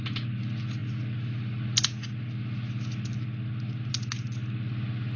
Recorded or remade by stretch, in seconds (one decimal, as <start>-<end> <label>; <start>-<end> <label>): 0.0-5.2 recorded